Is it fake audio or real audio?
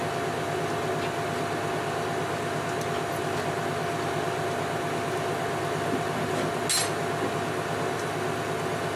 real